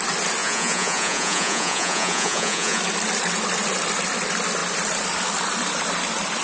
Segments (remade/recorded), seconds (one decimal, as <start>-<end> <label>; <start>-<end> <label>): 0.0-0.4 recorded; 0.4-2.8 remade; 2.8-6.4 recorded